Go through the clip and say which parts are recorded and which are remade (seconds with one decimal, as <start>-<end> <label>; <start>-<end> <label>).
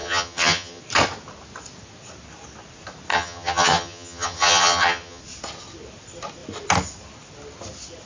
0.0-0.8 remade; 0.8-3.1 recorded; 3.1-5.2 remade; 5.2-8.1 recorded